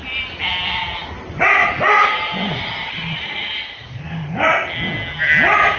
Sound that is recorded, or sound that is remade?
recorded